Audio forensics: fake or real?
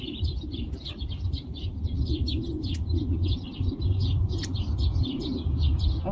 real